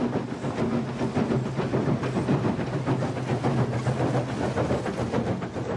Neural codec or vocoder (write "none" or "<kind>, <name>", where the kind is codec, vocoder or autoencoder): none